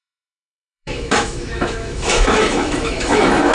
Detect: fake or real fake